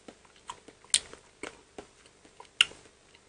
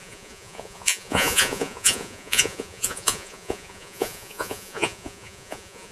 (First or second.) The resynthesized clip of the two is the second